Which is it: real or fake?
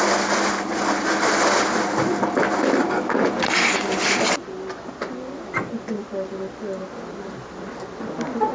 real